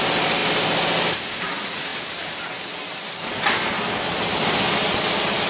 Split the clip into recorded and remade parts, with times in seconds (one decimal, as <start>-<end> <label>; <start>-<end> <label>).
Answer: 0.0-5.5 recorded